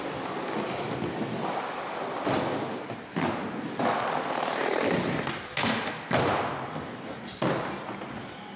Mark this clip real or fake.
real